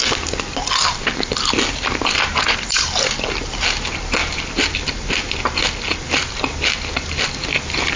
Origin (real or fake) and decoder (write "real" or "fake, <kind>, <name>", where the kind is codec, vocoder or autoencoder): real